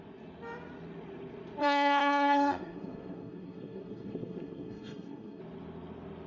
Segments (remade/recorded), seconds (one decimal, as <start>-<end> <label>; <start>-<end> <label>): 0.0-1.6 recorded; 1.6-5.4 remade; 5.4-6.3 recorded